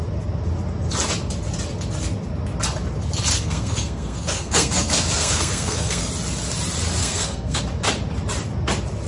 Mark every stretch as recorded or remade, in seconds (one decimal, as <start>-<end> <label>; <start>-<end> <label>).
0.0-3.3 recorded; 3.3-6.1 remade; 6.1-7.0 recorded; 7.0-7.6 remade; 7.6-9.1 recorded